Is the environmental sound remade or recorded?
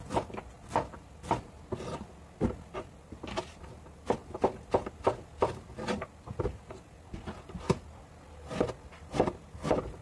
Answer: recorded